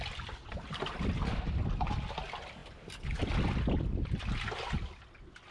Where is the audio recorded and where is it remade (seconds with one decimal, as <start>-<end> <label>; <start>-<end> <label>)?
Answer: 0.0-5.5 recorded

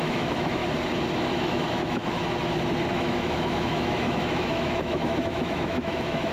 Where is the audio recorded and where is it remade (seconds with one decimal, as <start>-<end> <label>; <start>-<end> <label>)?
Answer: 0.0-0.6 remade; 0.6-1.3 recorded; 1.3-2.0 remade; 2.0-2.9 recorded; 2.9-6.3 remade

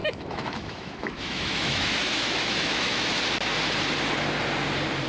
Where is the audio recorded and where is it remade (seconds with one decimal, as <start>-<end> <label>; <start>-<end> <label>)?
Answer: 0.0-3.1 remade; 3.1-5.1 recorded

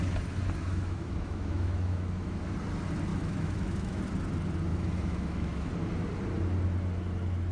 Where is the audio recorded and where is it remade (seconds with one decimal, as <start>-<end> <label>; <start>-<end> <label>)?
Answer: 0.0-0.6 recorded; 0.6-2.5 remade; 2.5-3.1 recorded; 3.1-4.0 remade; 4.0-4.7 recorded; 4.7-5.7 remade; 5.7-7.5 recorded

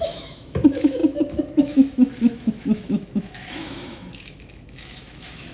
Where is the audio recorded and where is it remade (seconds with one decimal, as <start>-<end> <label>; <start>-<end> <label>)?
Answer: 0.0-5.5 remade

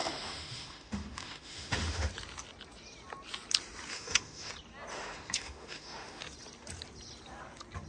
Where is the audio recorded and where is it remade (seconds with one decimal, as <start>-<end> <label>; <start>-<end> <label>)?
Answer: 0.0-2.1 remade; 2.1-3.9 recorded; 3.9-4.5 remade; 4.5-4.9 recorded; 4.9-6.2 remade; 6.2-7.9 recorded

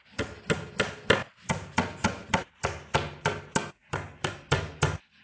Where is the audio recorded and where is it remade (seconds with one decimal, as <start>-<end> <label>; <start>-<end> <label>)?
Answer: 0.0-5.2 recorded

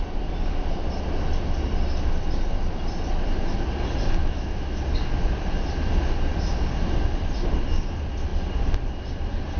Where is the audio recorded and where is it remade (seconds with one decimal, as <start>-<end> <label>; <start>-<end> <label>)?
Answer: 0.0-4.2 recorded; 4.2-4.8 remade; 4.8-9.6 recorded